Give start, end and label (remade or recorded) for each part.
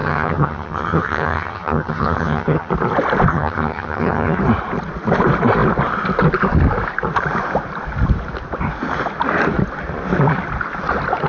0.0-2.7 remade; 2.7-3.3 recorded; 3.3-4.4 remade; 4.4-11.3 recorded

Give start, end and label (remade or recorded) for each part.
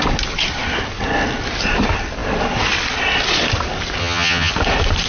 0.0-4.0 recorded; 4.0-4.5 remade; 4.5-5.1 recorded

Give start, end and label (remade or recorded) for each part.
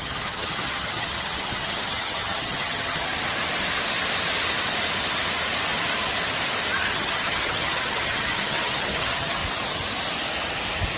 0.0-3.1 remade; 3.1-6.8 recorded; 6.8-9.4 remade; 9.4-11.0 recorded